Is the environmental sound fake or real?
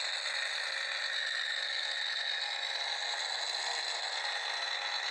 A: real